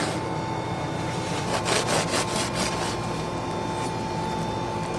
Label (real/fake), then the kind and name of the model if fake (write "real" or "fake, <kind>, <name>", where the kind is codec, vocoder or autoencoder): real